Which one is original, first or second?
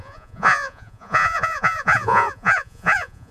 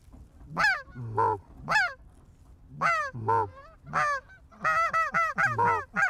second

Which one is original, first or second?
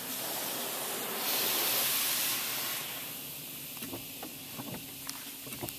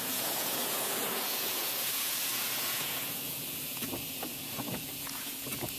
first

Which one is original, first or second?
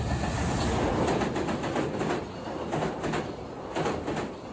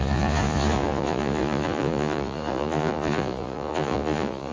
first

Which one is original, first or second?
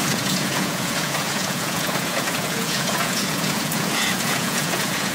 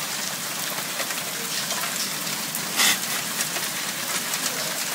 second